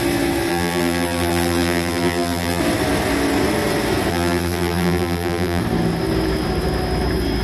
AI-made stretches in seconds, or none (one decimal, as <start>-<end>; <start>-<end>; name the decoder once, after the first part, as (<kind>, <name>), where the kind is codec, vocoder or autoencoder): 0.5-2.6 (vocoder, BigVGAN v2); 4.1-5.6